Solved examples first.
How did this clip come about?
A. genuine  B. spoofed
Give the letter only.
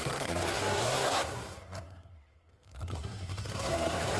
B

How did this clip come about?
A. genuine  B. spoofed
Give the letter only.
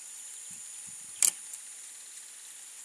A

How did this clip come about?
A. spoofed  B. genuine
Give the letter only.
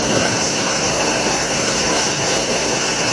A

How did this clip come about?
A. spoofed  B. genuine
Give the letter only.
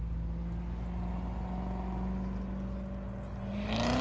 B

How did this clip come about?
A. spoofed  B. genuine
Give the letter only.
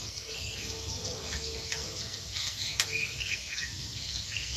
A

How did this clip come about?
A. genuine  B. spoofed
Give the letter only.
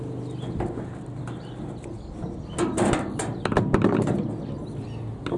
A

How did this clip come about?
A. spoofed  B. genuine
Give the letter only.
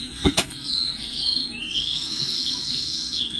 A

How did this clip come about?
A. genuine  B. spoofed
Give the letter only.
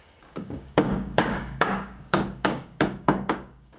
B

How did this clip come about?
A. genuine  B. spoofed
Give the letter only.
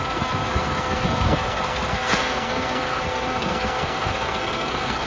B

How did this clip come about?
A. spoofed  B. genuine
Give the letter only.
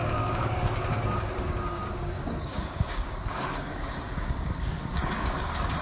A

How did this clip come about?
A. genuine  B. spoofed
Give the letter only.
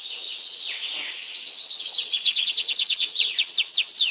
B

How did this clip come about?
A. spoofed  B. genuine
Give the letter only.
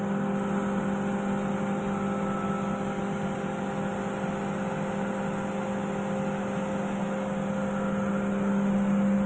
B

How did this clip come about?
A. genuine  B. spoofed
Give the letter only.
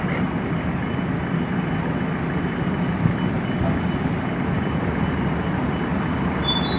A